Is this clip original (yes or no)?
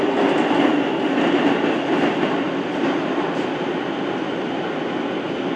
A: yes